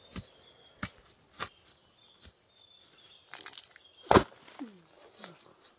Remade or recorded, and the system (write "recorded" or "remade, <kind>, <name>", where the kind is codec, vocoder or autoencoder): recorded